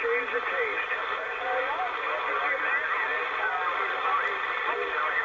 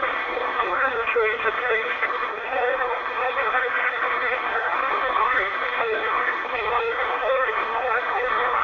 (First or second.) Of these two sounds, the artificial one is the second